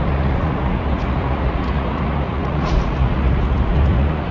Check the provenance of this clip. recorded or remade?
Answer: remade